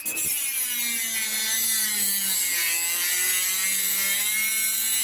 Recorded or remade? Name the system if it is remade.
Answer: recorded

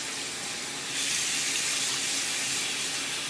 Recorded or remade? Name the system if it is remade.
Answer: recorded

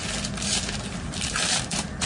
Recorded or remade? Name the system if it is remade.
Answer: recorded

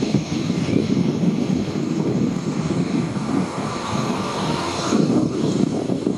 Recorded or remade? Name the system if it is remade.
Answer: remade, codec, DAC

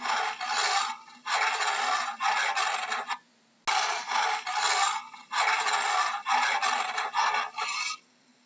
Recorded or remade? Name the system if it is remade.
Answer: recorded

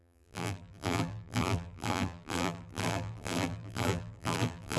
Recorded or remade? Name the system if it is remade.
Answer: remade, vocoder, BigVGAN v2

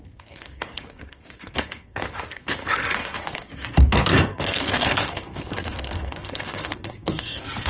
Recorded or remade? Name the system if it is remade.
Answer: remade, codec, SNAC